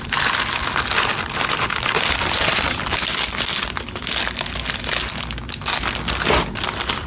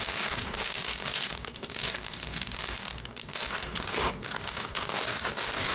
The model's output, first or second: second